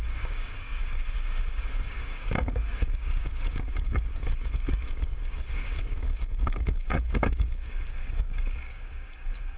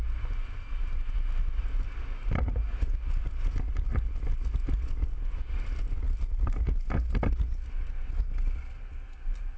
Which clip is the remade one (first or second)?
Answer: first